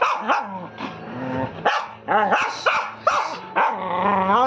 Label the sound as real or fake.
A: real